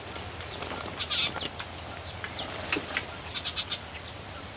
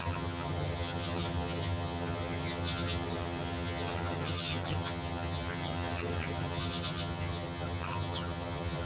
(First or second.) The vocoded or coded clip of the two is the second